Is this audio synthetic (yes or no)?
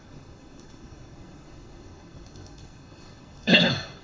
yes